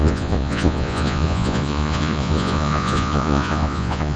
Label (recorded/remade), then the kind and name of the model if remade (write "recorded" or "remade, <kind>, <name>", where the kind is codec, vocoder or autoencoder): remade, vocoder, Vocos